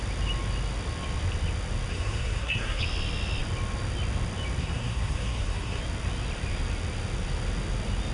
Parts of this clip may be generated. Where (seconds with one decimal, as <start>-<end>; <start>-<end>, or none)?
1.9-2.8; 4.6-5.8